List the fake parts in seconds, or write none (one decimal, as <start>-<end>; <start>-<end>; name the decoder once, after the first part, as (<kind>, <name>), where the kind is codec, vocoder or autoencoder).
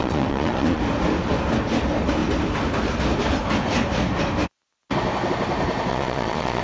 0.0-0.8 (vocoder, Vocos); 5.9-6.6